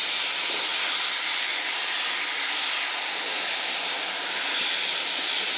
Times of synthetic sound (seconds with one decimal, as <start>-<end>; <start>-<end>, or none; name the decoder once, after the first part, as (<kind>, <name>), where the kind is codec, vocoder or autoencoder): none